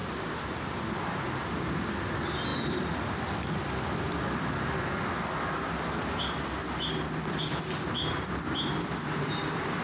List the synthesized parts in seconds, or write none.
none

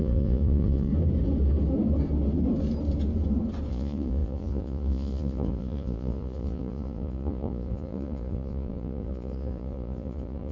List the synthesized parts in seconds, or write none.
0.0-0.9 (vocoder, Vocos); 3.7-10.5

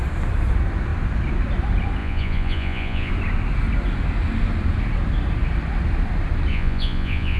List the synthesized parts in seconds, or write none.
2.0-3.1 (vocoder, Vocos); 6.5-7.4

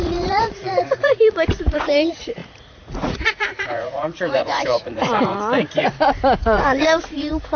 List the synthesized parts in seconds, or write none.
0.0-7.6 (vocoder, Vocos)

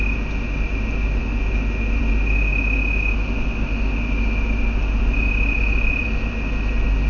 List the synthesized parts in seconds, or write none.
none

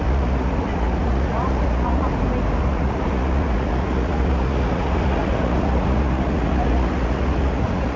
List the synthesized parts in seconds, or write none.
0.0-2.1 (vocoder, Vocos); 2.6-8.0